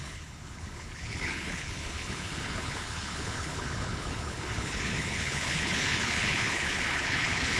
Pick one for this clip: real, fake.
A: fake